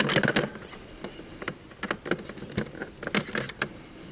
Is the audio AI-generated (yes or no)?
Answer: no